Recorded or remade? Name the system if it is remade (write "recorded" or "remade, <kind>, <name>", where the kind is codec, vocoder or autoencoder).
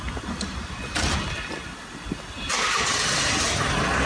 recorded